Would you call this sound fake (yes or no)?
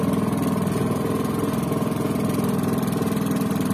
no